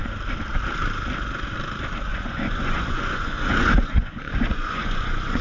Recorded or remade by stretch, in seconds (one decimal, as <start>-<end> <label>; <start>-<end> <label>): 0.0-2.1 recorded; 2.1-5.4 remade